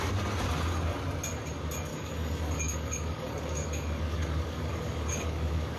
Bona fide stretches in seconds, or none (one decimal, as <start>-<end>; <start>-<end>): 0.0-1.9